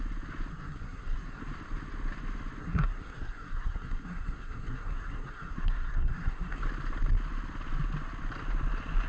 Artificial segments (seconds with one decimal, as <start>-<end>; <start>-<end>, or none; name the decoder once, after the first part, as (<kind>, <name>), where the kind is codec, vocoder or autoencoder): 0.5-1.4 (codec, SNAC); 2.6-6.6